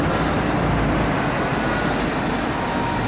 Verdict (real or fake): real